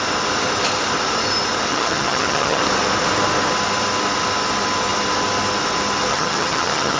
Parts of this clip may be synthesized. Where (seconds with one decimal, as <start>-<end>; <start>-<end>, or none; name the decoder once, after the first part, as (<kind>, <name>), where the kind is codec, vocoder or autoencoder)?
1.7-2.6 (vocoder, HiFi-GAN); 6.1-7.0